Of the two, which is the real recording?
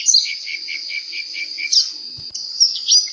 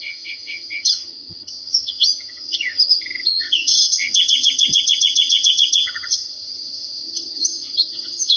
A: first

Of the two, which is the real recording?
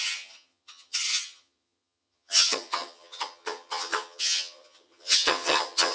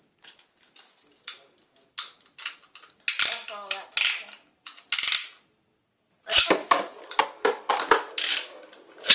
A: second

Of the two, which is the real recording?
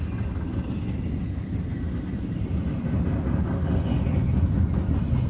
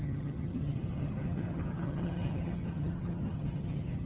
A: first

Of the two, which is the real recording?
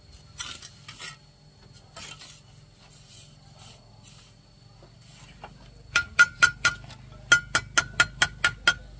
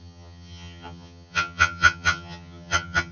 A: first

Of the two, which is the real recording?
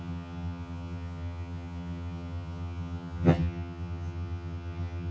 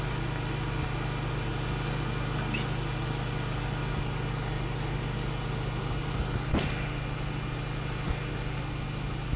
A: second